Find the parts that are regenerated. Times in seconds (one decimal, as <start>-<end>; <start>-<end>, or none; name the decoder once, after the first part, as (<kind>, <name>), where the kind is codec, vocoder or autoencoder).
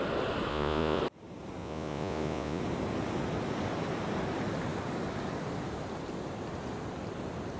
0.5-1.0 (vocoder, Vocos); 1.6-2.6